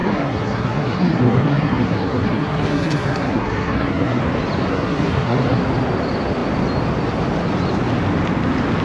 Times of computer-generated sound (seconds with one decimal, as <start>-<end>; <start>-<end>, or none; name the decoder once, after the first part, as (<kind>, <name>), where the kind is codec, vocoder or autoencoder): 0.0-4.2 (codec, SNAC); 4.7-5.6